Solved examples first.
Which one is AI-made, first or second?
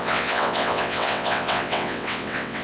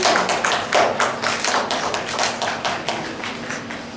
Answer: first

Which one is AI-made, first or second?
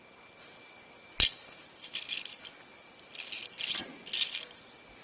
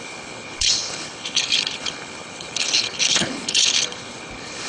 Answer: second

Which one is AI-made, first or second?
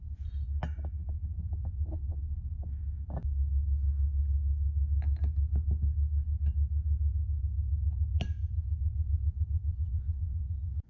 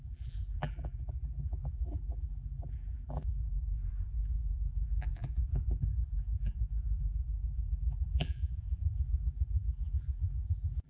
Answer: second